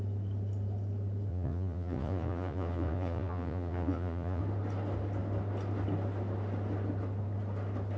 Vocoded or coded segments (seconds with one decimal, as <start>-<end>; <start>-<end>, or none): 1.3-4.4